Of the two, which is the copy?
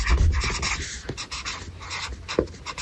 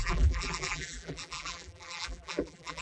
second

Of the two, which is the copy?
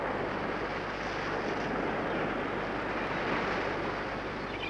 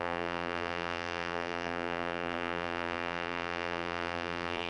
second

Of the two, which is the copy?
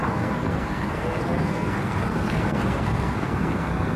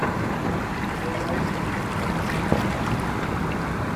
first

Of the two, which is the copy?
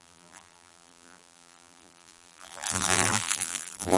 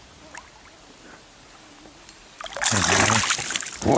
first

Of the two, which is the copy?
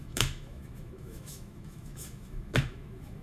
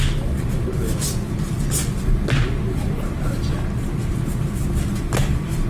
first